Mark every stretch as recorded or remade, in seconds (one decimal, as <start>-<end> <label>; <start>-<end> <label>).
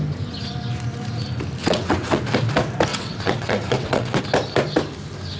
0.0-1.6 recorded; 1.6-2.2 remade; 2.2-2.9 recorded; 2.9-4.2 remade; 4.2-5.4 recorded